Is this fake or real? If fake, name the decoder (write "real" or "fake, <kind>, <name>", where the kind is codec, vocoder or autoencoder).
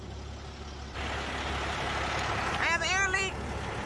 real